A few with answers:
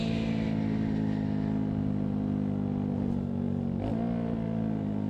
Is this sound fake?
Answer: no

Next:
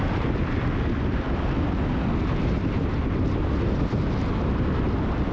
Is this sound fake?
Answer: no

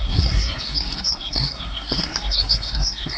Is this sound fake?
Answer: yes